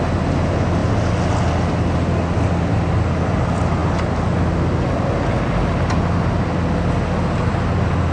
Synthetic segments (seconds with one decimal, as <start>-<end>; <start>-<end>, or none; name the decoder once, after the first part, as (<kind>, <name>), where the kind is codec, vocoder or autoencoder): none